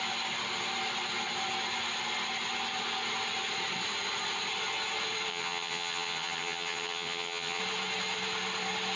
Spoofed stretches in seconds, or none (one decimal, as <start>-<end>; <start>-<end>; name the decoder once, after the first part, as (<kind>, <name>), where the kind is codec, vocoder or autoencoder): 5.3-7.6 (vocoder, HiFi-GAN)